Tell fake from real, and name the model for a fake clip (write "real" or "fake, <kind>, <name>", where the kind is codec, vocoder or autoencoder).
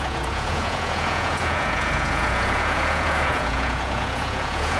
fake, vocoder, Vocos